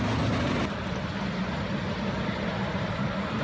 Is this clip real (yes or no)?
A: yes